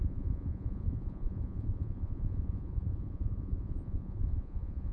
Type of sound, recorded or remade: remade